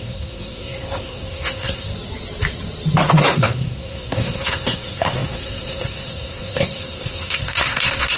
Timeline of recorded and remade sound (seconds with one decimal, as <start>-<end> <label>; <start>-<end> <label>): 0.0-1.9 remade; 1.9-3.1 recorded; 3.1-8.2 remade